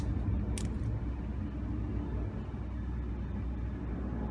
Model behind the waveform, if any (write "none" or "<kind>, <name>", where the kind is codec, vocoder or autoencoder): none